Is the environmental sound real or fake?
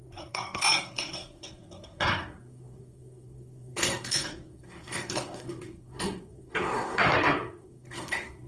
fake